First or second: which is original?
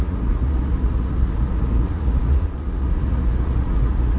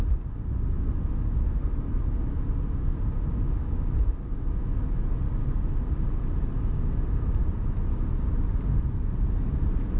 second